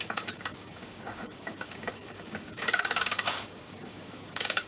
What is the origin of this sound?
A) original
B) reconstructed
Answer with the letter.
B